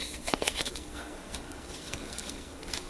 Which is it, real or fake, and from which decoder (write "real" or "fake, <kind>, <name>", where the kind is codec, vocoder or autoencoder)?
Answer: fake, codec, SNAC